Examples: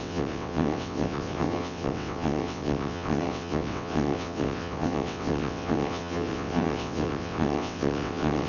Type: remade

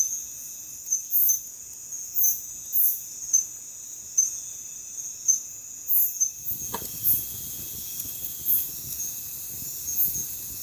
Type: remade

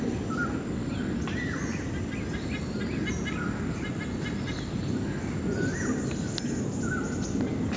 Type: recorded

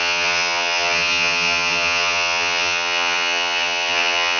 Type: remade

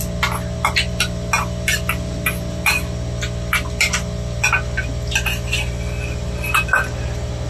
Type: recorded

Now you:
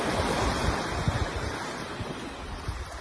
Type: recorded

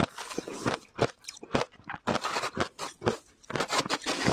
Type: recorded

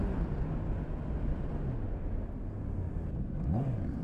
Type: recorded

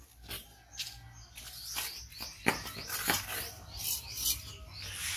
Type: recorded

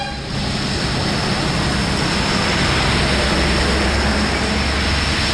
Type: recorded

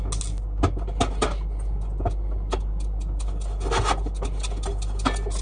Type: recorded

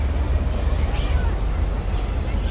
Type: recorded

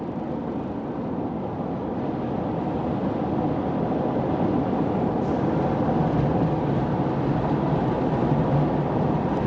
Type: recorded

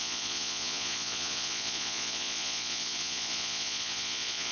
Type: remade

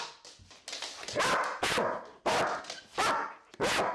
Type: recorded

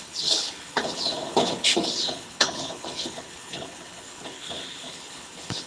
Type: remade